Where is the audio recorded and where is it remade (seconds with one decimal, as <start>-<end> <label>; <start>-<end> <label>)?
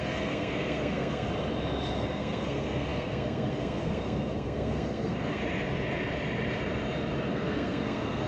0.0-1.3 remade; 1.3-1.9 recorded; 1.9-5.4 remade; 5.4-7.3 recorded; 7.3-8.3 remade